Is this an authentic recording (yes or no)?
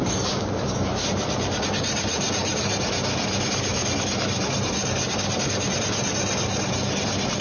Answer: no